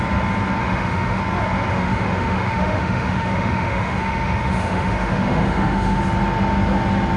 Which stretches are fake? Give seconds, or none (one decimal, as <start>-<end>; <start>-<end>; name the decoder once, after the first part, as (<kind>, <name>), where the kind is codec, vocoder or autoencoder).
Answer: 0.6-1.2 (autoencoder, DAC-VAE); 1.7-6.0